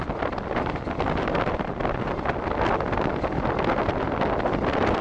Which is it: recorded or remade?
recorded